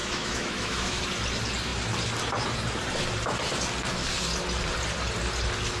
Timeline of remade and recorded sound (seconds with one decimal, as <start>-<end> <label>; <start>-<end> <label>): 0.0-1.0 remade; 1.0-5.8 recorded